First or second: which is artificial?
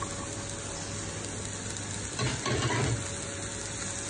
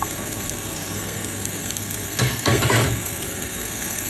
second